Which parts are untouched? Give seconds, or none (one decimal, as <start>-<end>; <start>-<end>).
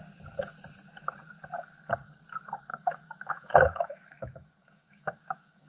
0.0-2.7